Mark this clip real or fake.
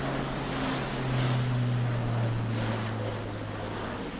real